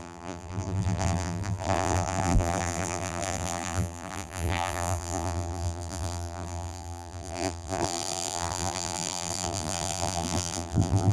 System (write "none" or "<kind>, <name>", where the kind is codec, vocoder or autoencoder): vocoder, BigVGAN v2